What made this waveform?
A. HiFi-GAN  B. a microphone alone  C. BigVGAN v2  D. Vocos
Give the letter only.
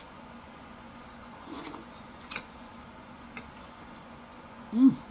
D